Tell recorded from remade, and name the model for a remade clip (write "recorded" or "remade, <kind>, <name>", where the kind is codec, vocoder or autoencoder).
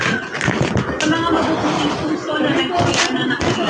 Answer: recorded